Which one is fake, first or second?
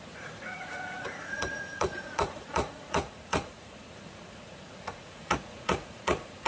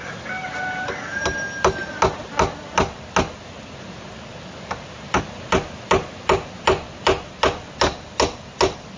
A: first